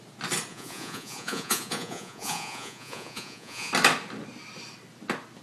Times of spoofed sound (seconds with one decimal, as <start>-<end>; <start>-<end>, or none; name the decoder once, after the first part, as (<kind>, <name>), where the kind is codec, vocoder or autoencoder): 0.5-3.7 (vocoder, Vocos)

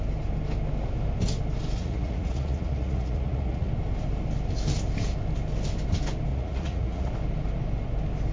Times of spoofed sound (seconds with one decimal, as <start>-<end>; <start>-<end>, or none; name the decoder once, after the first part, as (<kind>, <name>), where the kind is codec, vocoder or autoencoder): 1.8-3.7 (vocoder, Vocos); 6.3-7.1

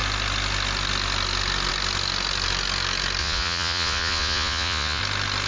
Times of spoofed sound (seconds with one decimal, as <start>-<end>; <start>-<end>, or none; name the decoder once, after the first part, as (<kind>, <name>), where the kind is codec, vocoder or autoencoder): 3.2-5.0 (vocoder, Vocos)

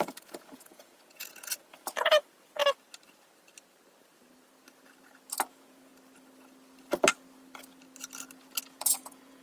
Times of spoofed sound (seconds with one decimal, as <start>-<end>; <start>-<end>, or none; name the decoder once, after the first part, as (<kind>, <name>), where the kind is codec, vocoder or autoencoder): 0.0-2.6 (vocoder, Vocos); 5.5-5.9; 8.6-9.4